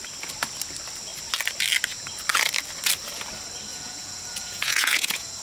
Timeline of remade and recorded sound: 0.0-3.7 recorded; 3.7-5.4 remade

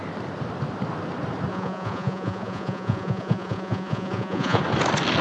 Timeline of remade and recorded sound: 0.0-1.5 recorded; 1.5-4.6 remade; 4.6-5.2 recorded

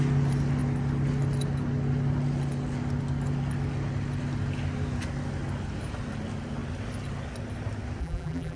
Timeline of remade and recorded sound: 0.0-8.0 recorded; 8.0-8.6 remade